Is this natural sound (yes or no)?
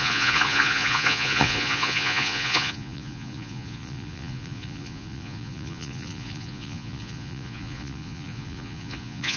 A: no